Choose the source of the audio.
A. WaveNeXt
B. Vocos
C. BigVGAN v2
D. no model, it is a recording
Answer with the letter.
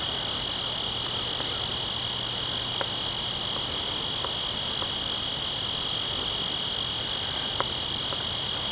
D